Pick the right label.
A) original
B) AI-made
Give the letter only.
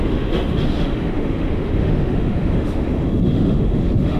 B